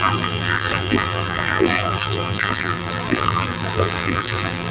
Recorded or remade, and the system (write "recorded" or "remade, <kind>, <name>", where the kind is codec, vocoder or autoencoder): remade, vocoder, BigVGAN v2